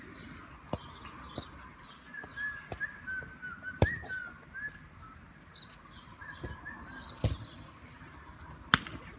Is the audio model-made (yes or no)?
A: no